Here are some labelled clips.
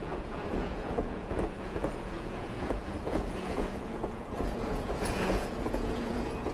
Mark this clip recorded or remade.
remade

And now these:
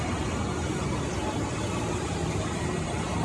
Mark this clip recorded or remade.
recorded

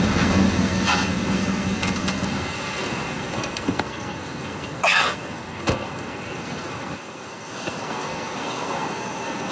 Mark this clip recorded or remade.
remade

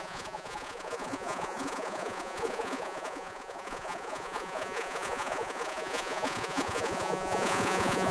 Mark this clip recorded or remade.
remade